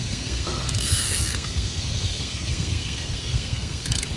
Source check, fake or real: fake